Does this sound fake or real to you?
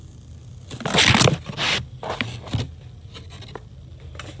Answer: real